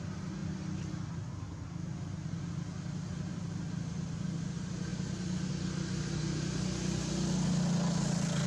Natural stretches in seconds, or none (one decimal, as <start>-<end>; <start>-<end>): 0.0-8.5